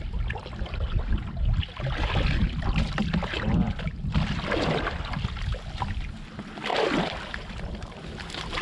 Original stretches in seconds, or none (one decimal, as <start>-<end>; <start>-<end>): 0.0-8.6